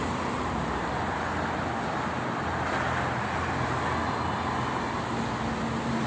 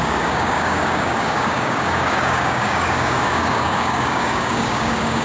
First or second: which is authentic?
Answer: first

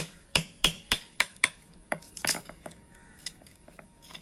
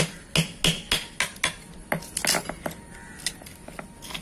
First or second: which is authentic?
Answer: second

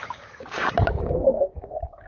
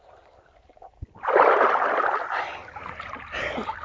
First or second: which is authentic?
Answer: second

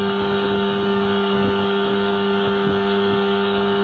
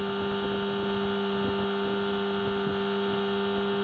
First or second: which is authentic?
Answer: second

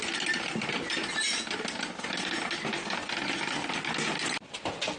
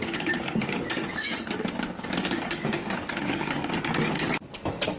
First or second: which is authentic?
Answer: first